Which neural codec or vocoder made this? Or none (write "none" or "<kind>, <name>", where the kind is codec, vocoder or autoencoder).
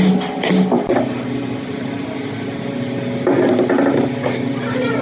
none